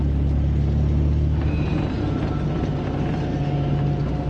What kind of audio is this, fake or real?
real